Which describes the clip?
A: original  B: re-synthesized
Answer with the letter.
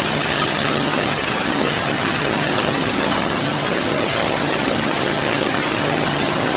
B